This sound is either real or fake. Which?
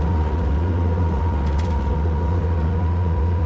fake